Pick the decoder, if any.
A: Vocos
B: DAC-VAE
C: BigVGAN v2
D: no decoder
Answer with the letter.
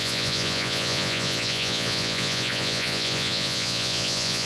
A